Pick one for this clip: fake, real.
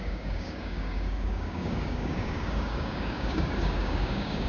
fake